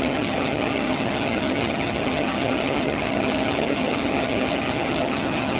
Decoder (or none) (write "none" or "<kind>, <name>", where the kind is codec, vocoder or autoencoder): vocoder, HiFi-GAN